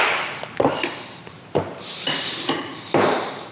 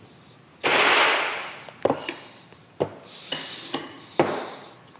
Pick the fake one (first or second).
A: first